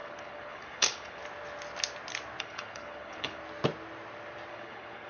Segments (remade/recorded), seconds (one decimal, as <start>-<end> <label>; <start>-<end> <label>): 0.0-1.2 remade; 1.2-2.4 recorded; 2.4-3.4 remade; 3.4-4.5 recorded; 4.5-5.1 remade